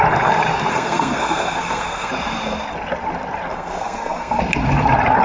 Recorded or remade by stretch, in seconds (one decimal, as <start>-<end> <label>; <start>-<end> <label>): 0.0-0.7 recorded; 0.7-2.1 remade; 2.1-3.5 recorded; 3.5-4.4 remade; 4.4-5.2 recorded